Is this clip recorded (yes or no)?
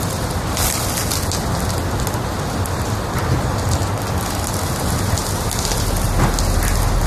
yes